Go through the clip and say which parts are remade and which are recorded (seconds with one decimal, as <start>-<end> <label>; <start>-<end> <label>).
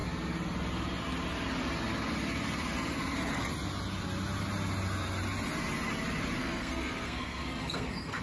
0.0-6.4 recorded; 6.4-8.2 remade